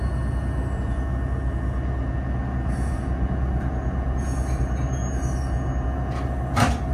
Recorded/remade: recorded